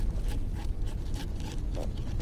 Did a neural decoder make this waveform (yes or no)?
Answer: no